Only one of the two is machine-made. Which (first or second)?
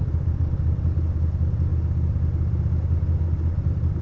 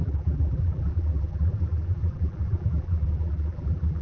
second